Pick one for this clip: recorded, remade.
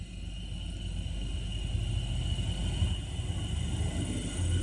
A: recorded